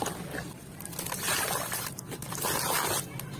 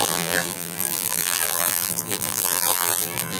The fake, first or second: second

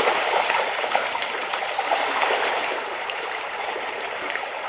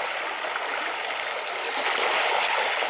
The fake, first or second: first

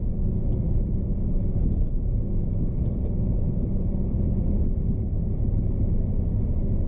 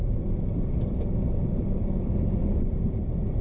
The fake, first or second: second